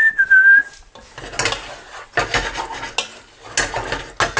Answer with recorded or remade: recorded